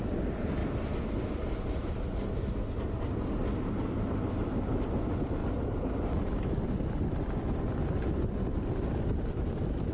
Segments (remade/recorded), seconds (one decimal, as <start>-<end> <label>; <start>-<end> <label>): 0.0-0.6 remade; 0.6-3.8 recorded; 3.8-5.4 remade; 5.4-7.9 recorded; 7.9-9.9 remade